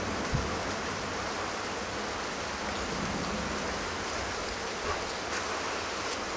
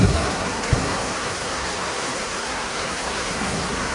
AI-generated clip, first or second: second